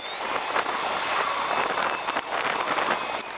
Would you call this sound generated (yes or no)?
no